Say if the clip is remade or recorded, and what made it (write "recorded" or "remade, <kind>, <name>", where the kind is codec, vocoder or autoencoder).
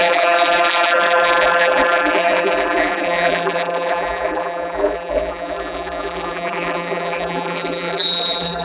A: remade, vocoder, BigVGAN v2